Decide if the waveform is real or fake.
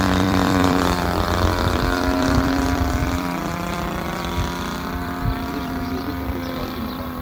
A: fake